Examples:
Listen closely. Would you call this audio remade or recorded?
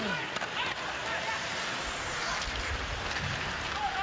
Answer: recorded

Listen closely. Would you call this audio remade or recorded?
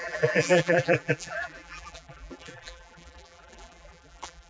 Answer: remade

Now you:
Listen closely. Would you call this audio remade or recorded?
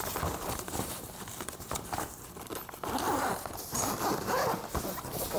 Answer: remade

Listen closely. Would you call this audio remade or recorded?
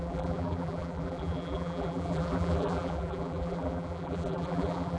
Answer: remade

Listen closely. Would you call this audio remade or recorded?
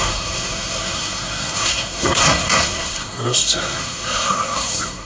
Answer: remade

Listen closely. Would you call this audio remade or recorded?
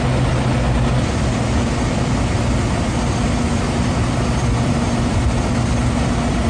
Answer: recorded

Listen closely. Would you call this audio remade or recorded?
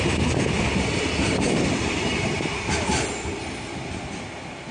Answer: recorded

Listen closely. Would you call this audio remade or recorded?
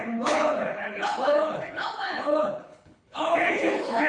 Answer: remade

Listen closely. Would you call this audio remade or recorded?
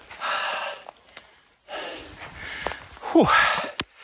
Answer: recorded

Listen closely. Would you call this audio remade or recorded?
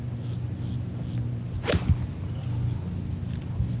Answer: recorded